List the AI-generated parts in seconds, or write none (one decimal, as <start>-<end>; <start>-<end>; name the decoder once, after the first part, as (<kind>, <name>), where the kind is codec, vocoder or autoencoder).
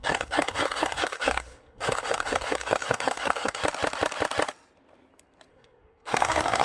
0.0-3.6 (codec, SNAC); 5.5-6.6